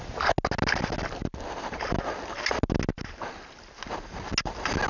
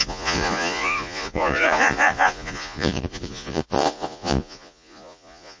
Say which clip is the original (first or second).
first